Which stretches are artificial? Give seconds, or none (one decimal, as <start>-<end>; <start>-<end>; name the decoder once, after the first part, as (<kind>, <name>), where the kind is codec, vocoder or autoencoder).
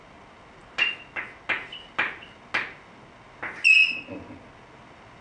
none